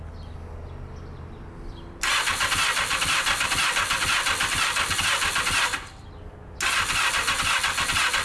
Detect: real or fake real